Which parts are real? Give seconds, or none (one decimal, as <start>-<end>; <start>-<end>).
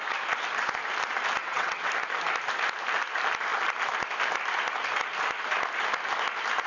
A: 0.0-1.4; 1.9-6.7